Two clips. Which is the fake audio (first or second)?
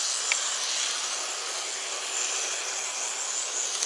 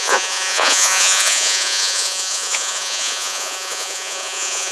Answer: second